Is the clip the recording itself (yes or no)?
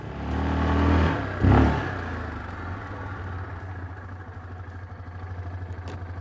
yes